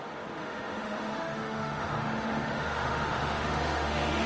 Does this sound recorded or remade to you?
remade